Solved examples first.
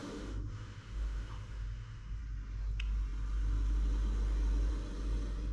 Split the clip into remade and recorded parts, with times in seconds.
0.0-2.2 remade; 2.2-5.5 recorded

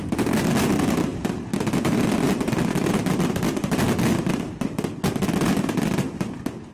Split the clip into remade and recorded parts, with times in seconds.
0.0-6.7 recorded

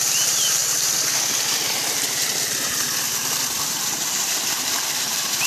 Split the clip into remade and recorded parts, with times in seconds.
0.0-0.6 remade; 0.6-3.9 recorded; 3.9-5.5 remade

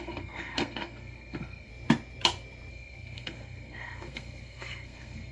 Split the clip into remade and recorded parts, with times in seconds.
0.0-1.7 remade; 1.7-2.7 recorded; 2.7-5.3 remade

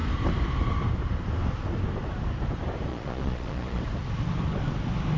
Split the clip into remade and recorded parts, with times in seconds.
0.0-2.9 recorded; 2.9-3.8 remade; 3.8-5.2 recorded